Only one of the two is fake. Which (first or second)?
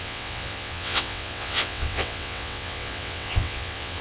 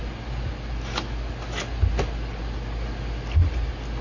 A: first